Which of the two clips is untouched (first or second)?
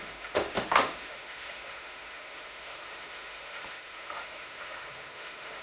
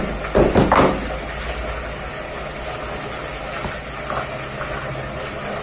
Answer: second